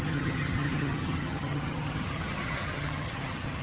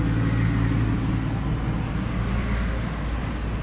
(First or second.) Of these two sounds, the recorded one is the second